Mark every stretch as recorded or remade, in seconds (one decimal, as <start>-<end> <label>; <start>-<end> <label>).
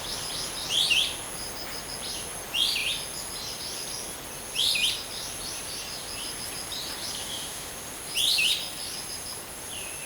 0.0-7.2 recorded; 7.2-7.7 remade; 7.7-10.1 recorded